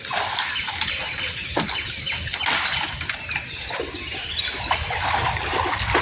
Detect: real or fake real